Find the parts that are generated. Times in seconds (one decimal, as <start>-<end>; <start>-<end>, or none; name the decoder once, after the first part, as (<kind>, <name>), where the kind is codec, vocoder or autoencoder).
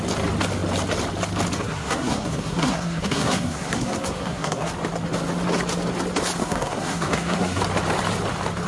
1.6-4.7 (codec, SNAC); 6.4-7.6